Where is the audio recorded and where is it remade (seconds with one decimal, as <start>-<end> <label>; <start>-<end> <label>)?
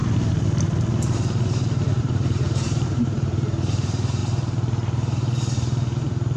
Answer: 0.0-2.0 recorded; 2.0-4.2 remade; 4.2-6.4 recorded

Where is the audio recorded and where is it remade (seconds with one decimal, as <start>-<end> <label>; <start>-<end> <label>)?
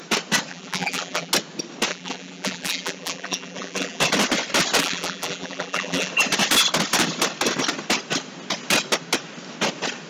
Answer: 0.0-0.5 recorded; 0.5-1.3 remade; 1.3-1.9 recorded; 1.9-4.0 remade; 4.0-4.8 recorded; 4.8-6.1 remade; 6.1-10.1 recorded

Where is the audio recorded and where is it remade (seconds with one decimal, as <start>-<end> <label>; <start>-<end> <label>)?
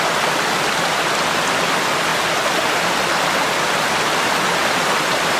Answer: 0.0-4.5 recorded; 4.5-5.4 remade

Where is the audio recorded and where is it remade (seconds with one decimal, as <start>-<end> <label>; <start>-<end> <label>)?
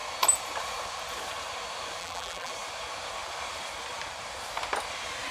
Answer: 0.0-2.0 recorded; 2.0-2.5 remade; 2.5-5.3 recorded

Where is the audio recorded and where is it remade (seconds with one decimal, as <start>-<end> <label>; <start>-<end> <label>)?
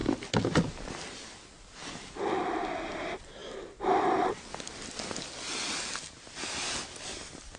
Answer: 0.0-7.6 recorded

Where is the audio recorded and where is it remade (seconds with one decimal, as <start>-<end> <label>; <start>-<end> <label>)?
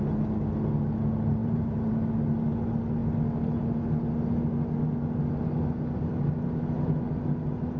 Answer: 0.0-1.4 recorded; 1.4-1.9 remade; 1.9-7.8 recorded